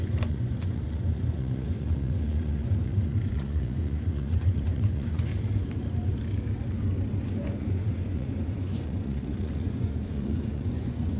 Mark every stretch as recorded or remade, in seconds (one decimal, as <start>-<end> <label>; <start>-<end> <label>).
0.0-5.3 remade; 5.3-7.3 recorded; 7.3-11.2 remade